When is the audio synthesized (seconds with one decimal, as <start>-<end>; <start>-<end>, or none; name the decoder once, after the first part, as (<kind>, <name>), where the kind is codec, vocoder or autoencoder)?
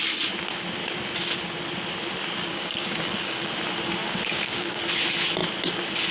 2.5-3.5 (codec, DAC); 4.0-4.8